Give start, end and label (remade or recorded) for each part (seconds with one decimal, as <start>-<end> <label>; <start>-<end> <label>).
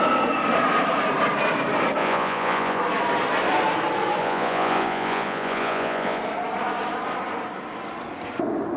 0.0-2.0 recorded; 2.0-2.8 remade; 2.8-4.2 recorded; 4.2-6.2 remade; 6.2-8.8 recorded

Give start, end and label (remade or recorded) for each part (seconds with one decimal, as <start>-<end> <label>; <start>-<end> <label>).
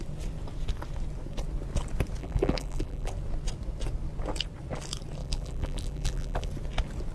0.0-2.2 recorded; 2.2-3.1 remade; 3.1-5.2 recorded; 5.2-6.5 remade; 6.5-7.1 recorded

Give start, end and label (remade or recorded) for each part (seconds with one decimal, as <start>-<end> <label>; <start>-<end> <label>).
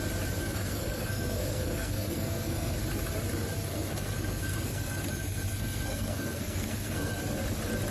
0.0-0.4 recorded; 0.4-2.8 remade; 2.8-3.7 recorded; 3.7-7.2 remade; 7.2-7.9 recorded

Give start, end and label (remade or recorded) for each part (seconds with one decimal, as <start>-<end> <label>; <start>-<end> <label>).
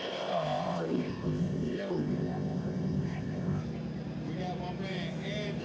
0.0-3.6 remade; 3.6-5.6 recorded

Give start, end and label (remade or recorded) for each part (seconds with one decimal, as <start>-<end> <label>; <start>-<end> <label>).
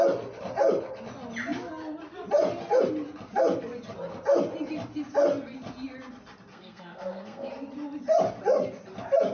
0.0-6.5 recorded; 6.5-7.5 remade; 7.5-9.3 recorded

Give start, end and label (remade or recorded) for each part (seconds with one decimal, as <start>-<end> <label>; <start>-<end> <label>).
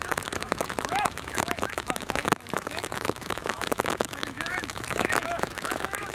0.0-6.1 remade